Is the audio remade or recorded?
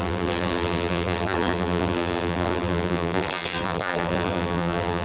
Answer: remade